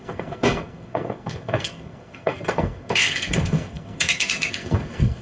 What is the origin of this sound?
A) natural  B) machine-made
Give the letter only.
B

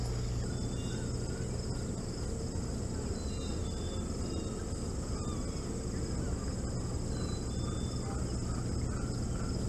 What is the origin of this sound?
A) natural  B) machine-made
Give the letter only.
A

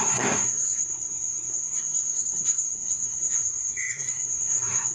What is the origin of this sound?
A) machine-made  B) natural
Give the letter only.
A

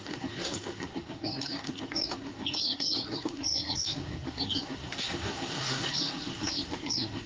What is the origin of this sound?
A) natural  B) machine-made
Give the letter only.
B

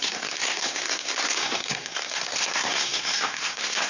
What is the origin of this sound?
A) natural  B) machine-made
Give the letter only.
B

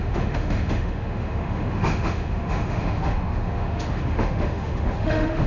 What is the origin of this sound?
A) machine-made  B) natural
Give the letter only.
A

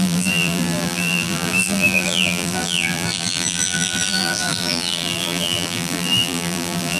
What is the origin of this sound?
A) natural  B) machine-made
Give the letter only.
B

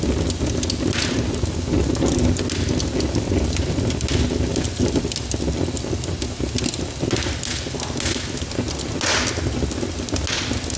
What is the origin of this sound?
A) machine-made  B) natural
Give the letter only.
B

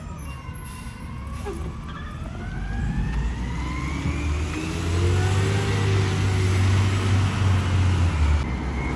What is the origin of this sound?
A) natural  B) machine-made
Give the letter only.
A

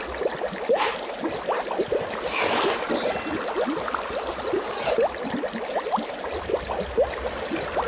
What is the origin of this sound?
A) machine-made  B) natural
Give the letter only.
B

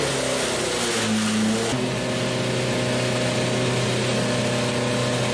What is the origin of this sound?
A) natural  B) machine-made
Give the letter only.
A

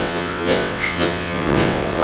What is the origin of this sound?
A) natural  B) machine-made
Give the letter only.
B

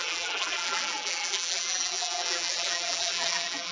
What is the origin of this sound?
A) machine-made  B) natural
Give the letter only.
A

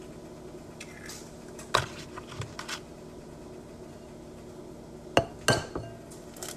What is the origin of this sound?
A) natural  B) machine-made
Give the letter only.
A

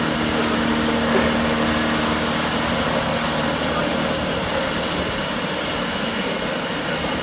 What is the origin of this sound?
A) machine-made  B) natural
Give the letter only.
B